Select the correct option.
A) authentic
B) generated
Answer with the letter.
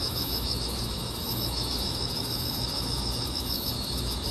B